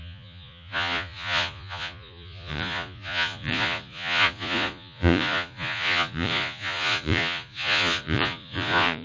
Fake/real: fake